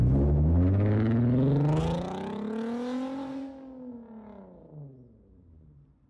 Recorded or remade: recorded